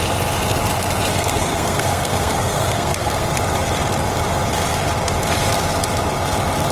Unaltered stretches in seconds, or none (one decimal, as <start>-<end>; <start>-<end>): 0.0-1.1; 3.3-6.7